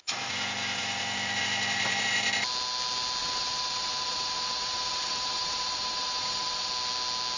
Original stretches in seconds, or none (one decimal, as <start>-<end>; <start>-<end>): 0.0-3.2; 6.7-7.4